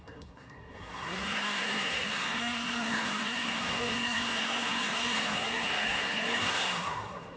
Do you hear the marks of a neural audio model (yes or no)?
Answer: yes